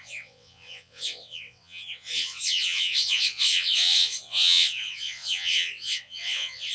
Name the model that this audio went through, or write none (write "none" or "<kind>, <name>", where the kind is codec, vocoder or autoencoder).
vocoder, WaveNeXt